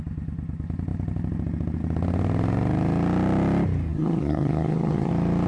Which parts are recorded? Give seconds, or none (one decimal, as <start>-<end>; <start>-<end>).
0.0-3.9; 5.1-5.5